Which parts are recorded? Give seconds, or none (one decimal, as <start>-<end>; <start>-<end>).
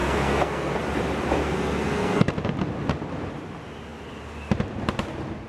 0.8-1.4; 2.3-5.5